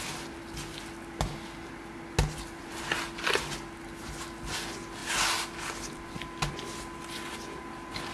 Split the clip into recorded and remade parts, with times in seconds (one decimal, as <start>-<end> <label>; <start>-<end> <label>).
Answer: 0.0-2.7 recorded; 2.7-4.5 remade; 4.5-5.0 recorded; 5.0-6.5 remade; 6.5-8.1 recorded